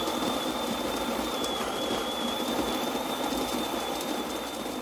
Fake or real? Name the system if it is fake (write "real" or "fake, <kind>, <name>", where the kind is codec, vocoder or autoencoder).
real